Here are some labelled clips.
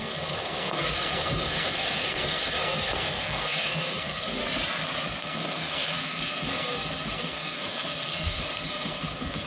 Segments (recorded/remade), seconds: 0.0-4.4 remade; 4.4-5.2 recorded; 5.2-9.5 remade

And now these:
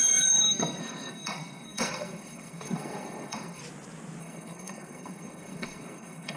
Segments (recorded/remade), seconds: 0.0-3.6 remade; 3.6-4.2 recorded; 4.2-6.4 remade

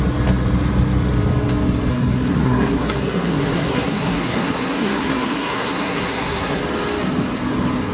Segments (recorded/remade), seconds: 0.0-1.9 recorded; 1.9-6.6 remade; 6.6-7.9 recorded

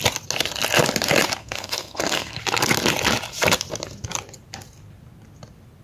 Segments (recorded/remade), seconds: 0.0-1.4 recorded; 1.4-2.4 remade; 2.4-5.8 recorded

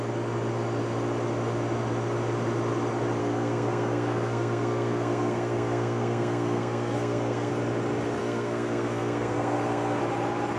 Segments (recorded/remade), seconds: 0.0-3.2 recorded; 3.2-7.5 remade; 7.5-8.2 recorded; 8.2-10.0 remade; 10.0-10.6 recorded

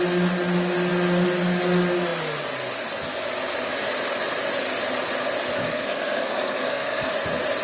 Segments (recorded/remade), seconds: 0.0-5.6 recorded; 5.6-7.1 remade; 7.1-7.6 recorded